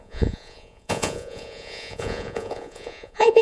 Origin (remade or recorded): remade